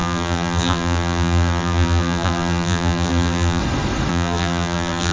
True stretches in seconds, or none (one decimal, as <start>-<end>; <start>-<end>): 3.6-4.1